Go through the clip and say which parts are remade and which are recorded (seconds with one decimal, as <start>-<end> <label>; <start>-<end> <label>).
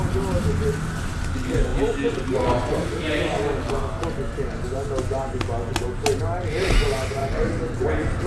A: 0.0-8.3 recorded